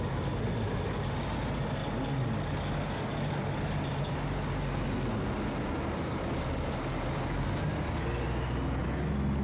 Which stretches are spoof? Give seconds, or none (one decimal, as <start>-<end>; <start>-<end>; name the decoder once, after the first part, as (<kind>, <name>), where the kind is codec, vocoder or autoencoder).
none